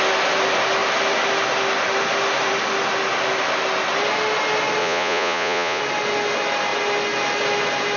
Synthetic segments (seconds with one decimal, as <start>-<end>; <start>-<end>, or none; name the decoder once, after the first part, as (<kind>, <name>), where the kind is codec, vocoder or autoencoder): 4.8-5.8 (vocoder, Vocos)